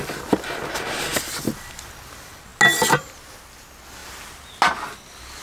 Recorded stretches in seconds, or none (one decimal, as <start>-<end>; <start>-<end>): 0.0-5.4